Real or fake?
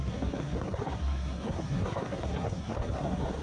fake